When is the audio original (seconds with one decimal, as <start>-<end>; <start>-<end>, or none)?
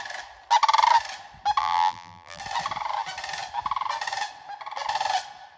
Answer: 0.0-1.6; 2.4-5.6